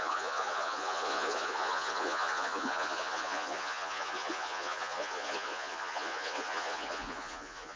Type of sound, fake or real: fake